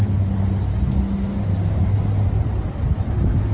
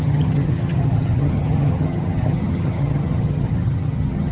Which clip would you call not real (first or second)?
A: second